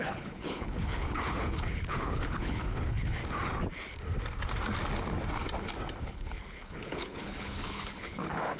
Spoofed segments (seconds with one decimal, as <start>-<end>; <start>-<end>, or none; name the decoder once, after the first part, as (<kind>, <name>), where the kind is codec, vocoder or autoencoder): 0.0-3.2 (codec, HILCodec); 6.0-8.6